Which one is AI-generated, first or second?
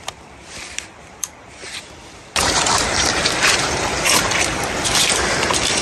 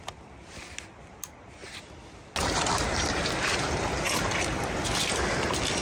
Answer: first